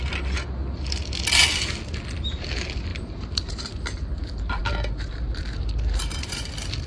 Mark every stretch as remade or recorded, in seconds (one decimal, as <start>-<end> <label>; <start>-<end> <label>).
0.0-2.9 recorded; 2.9-3.6 remade; 3.6-4.6 recorded; 4.6-6.5 remade; 6.5-6.9 recorded